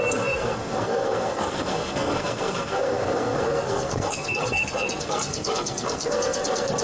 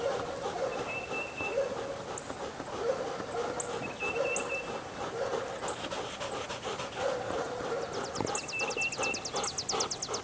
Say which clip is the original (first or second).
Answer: second